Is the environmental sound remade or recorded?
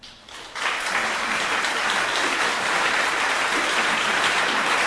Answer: remade